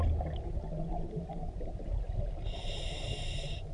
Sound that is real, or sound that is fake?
real